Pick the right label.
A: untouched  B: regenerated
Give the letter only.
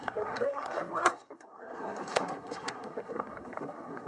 B